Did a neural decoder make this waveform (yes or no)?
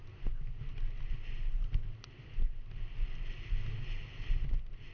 no